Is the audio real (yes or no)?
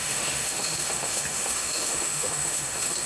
no